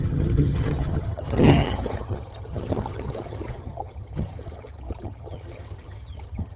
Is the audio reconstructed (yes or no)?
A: yes